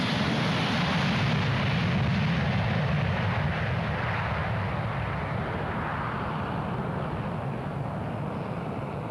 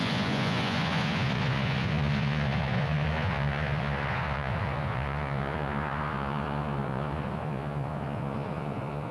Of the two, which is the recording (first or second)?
first